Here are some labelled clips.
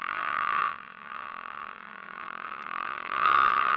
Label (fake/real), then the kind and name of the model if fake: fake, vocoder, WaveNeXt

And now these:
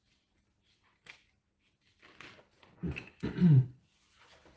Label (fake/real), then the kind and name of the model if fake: real